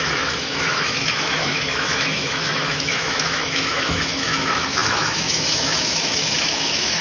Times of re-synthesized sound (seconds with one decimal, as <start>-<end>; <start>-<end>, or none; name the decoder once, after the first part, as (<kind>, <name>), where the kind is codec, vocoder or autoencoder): 0.0-7.0 (autoencoder, DAC-VAE)